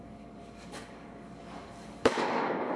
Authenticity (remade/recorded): remade